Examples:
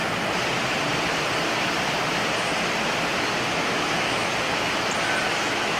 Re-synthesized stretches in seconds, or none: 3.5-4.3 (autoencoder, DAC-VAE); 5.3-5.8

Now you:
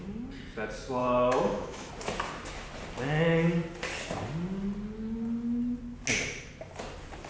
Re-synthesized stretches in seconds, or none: 1.0-1.9 (autoencoder, DAC-VAE)

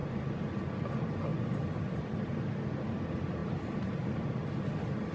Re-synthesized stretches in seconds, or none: 1.3-3.0 (vocoder, BigVGAN v2)

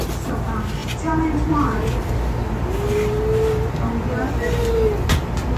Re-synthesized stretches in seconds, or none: none

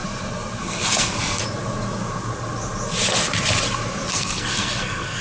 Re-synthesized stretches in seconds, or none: 0.6-1.4 (codec, SNAC); 4.1-5.2